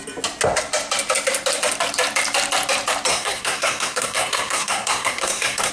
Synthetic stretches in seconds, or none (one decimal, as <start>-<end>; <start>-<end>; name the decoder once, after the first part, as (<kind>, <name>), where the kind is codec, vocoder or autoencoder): 3.1-5.7 (codec, SNAC)